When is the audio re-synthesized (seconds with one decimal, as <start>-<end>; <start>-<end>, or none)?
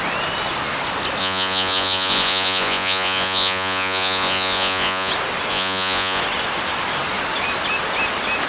1.2-5.1; 5.5-6.2